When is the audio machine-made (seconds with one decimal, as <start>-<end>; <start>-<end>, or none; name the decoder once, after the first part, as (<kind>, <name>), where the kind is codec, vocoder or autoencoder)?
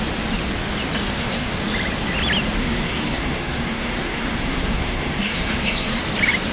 1.1-1.6 (codec, SNAC); 2.6-6.0